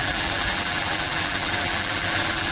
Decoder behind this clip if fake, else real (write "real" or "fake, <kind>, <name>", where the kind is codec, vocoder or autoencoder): fake, vocoder, BigVGAN v2